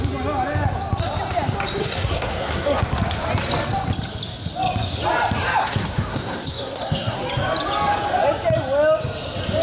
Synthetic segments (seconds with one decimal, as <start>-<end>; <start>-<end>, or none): 1.8-2.8; 5.6-7.2